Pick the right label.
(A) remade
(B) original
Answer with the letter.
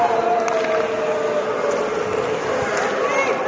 B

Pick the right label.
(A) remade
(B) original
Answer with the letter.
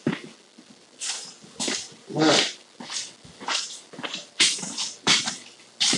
B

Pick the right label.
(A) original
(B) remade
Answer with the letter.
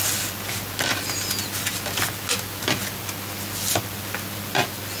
A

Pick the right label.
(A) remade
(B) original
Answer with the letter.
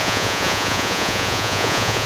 A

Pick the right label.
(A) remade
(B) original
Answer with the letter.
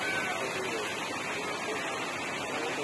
B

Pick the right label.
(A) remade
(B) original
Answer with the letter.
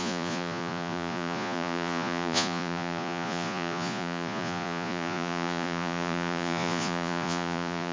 A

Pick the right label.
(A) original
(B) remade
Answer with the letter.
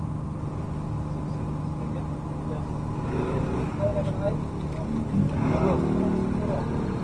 A